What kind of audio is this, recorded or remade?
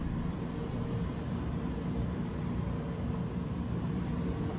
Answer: remade